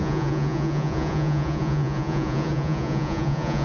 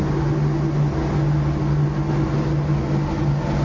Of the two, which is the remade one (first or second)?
first